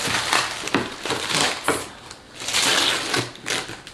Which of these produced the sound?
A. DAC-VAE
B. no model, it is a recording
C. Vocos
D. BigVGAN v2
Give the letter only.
B